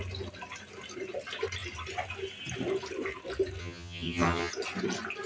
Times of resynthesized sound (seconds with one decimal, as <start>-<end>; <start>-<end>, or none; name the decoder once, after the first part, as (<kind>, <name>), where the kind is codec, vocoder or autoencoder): 3.6-4.5 (vocoder, HiFi-GAN)